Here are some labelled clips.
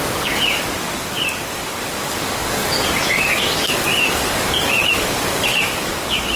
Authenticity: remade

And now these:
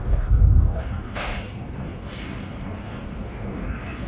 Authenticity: remade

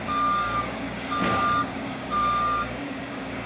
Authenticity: remade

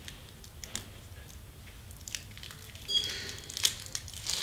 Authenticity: recorded